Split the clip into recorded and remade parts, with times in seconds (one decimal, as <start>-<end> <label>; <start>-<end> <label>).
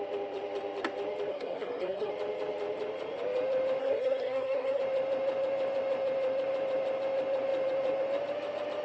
0.0-1.3 recorded; 1.3-2.1 remade; 2.1-3.8 recorded; 3.8-4.8 remade; 4.8-8.8 recorded